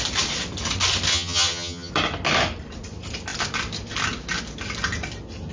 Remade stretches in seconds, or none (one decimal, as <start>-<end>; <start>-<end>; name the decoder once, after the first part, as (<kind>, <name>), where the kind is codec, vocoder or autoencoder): 1.1-1.9 (vocoder, HiFi-GAN)